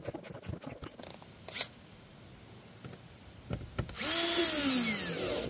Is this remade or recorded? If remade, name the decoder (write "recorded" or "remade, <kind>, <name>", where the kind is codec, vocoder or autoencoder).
recorded